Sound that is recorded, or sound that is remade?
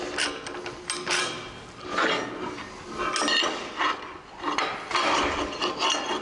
recorded